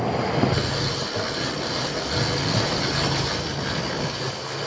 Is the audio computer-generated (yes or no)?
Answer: no